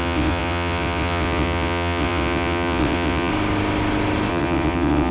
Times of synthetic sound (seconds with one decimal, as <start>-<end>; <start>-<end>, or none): 0.0-3.3; 4.3-5.1